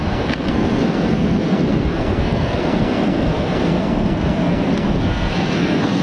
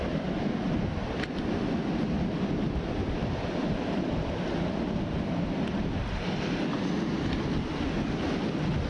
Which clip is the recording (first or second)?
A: second